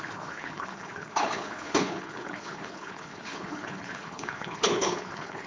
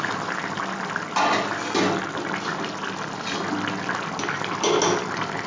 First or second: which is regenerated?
first